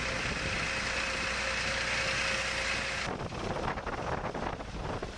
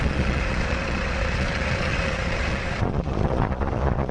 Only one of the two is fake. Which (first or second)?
second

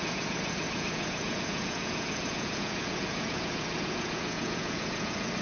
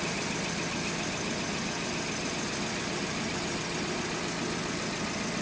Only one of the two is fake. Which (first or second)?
first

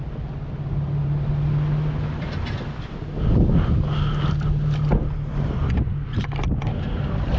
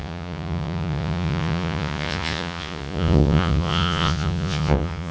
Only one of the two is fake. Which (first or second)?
second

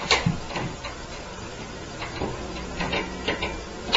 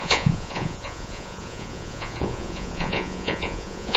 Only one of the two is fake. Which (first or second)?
second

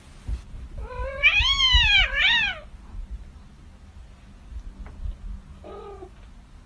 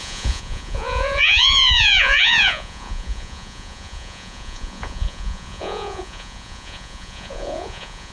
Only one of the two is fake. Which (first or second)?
second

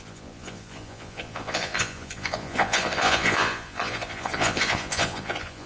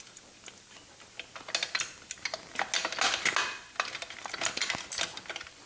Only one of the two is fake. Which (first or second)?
first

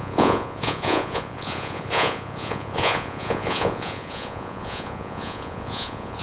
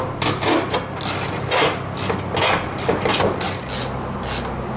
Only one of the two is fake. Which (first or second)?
first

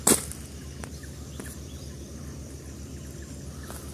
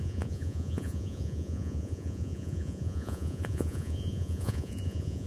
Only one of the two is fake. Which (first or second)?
second